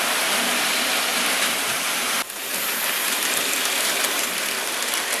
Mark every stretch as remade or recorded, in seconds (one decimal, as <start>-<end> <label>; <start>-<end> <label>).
0.0-1.1 recorded; 1.1-4.2 remade; 4.2-5.2 recorded